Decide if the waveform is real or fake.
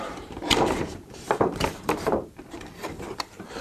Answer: fake